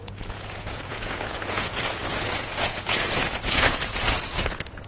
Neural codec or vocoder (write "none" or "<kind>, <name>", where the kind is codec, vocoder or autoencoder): vocoder, Vocos